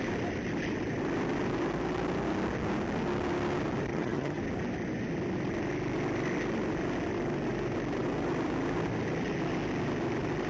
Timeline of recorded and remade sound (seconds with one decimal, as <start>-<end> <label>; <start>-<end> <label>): 0.0-3.9 recorded; 3.9-4.4 remade; 4.4-10.5 recorded